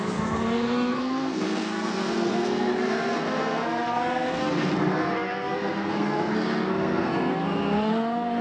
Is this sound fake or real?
fake